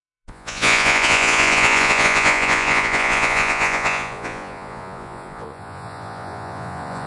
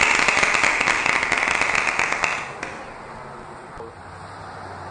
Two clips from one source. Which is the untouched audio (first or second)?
second